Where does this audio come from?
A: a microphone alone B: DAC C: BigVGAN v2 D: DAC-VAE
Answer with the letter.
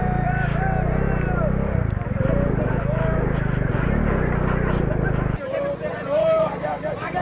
A